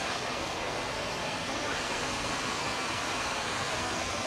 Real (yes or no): no